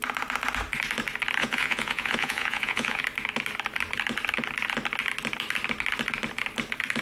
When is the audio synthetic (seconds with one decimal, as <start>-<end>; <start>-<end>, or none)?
1.4-3.0